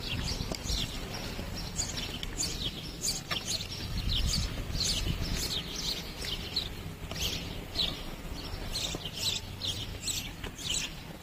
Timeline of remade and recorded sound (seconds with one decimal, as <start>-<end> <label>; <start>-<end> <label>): 0.0-11.2 recorded